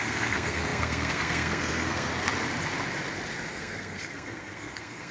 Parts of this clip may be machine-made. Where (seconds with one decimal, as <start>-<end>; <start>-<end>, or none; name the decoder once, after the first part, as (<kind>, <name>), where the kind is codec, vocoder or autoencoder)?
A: 0.0-2.1 (codec, SNAC); 3.5-5.1